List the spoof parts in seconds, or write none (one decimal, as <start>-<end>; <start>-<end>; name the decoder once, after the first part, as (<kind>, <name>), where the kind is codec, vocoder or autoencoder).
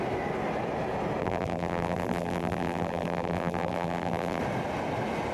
1.2-4.4 (vocoder, BigVGAN v2)